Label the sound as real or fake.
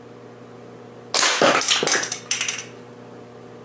real